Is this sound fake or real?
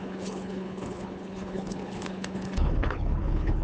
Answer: fake